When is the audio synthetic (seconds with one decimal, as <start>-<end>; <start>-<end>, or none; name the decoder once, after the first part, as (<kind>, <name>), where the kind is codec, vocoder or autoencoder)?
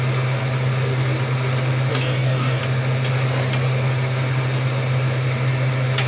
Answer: 1.9-2.6 (codec, DAC)